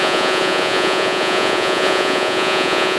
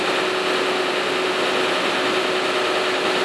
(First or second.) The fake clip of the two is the first